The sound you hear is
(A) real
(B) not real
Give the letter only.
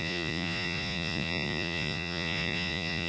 B